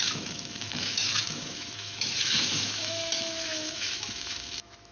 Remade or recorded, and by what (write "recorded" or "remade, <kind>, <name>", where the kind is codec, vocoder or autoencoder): remade, autoencoder, DAC-VAE